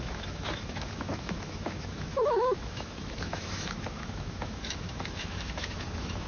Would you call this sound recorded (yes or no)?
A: no